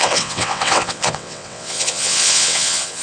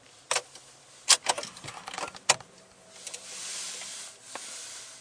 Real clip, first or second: second